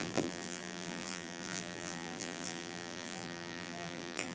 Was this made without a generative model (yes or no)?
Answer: no